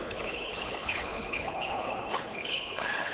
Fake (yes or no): yes